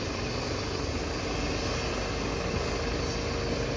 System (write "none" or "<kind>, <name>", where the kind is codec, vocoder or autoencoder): none